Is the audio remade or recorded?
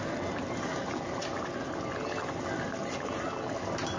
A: recorded